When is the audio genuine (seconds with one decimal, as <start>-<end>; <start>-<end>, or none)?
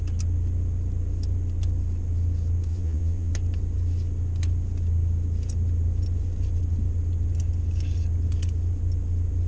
0.0-2.7; 3.3-9.5